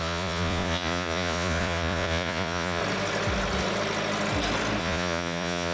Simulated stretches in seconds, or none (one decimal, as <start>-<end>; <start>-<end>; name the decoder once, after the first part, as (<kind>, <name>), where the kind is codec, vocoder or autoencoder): 0.0-2.8 (vocoder, Vocos); 4.8-5.7